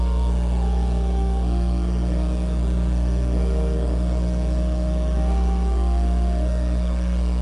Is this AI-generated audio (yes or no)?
yes